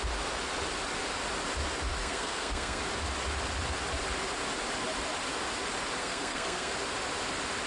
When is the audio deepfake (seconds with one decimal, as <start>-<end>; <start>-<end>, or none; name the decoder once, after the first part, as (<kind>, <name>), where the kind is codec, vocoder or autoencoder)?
2.0-2.8 (codec, SNAC); 6.0-6.7

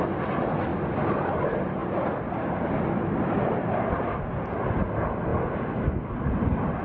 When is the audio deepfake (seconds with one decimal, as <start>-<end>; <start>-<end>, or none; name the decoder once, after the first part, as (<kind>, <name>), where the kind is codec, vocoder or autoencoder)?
none

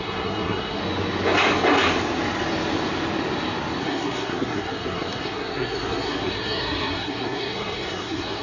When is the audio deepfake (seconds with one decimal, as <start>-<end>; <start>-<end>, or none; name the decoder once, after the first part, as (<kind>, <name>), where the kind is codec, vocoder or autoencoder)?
0.0-0.8 (codec, SNAC); 3.8-8.4

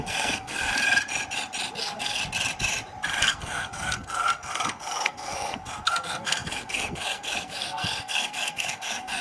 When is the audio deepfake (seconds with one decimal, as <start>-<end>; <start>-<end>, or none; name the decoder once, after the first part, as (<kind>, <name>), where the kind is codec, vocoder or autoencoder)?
0.0-0.7 (codec, SNAC); 1.8-2.2; 3.2-9.2